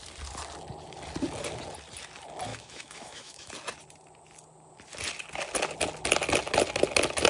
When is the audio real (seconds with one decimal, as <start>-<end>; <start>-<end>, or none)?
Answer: 0.0-2.5; 3.5-7.3